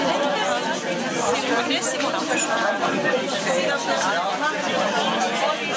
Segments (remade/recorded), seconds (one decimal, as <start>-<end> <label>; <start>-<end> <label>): 0.0-5.8 recorded